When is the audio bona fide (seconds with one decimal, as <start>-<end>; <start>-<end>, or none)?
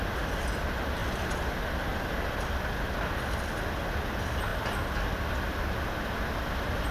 0.0-6.9